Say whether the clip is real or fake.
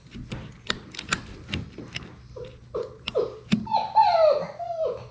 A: real